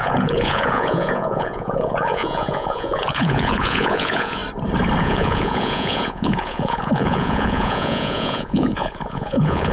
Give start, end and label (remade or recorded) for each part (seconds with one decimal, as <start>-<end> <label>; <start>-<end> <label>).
0.0-4.4 remade; 4.4-5.0 recorded; 5.0-9.7 remade